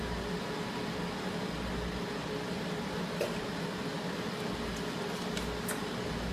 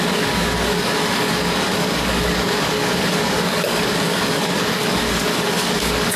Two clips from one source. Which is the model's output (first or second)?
second